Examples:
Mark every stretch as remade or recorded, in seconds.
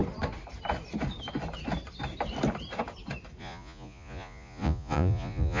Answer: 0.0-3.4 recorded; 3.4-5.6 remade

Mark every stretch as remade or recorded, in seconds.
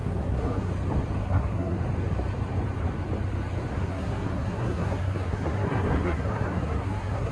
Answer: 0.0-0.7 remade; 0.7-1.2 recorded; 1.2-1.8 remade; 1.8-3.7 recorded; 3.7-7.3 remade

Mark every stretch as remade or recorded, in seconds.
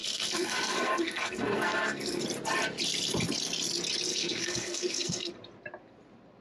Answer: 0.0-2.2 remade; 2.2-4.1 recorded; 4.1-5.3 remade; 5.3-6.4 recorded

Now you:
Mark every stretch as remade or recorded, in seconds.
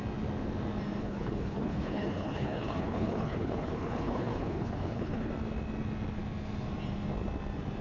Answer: 0.0-1.0 recorded; 1.0-5.3 remade; 5.3-7.8 recorded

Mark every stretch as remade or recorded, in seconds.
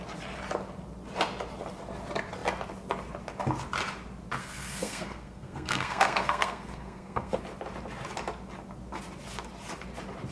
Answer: 0.0-4.4 recorded; 4.4-7.4 remade; 7.4-10.3 recorded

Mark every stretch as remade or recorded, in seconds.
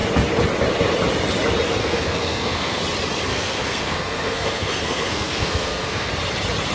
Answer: 0.0-1.8 recorded; 1.8-2.8 remade; 2.8-3.3 recorded; 3.3-6.1 remade; 6.1-6.7 recorded